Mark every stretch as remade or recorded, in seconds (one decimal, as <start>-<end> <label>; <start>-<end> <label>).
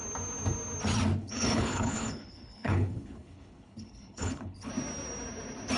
0.0-1.2 recorded; 1.2-4.7 remade; 4.7-5.8 recorded